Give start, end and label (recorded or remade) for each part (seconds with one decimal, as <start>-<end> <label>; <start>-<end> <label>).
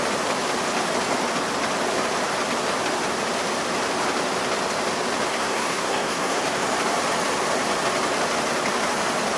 0.0-5.3 recorded; 5.3-6.4 remade; 6.4-9.4 recorded